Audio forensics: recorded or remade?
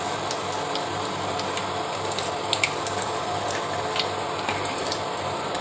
recorded